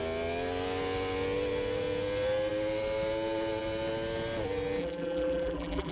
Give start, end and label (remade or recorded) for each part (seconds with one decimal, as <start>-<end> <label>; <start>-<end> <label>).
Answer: 0.0-4.8 recorded; 4.8-5.9 remade